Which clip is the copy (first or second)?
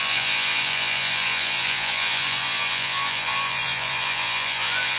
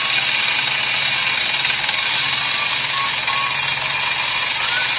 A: first